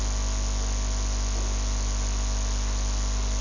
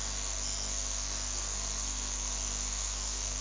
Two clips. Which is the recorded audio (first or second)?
first